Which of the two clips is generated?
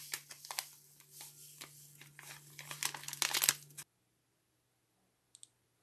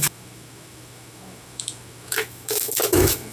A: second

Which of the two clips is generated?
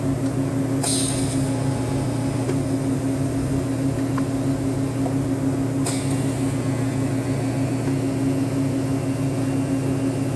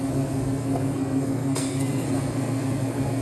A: second